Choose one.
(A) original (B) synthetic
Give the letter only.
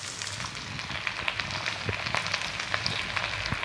A